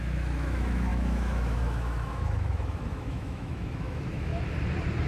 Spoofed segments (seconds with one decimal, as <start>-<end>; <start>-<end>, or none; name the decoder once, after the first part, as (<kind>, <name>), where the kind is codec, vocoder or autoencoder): 0.0-4.3 (autoencoder, DAC-VAE)